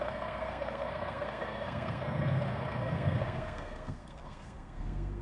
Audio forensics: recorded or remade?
remade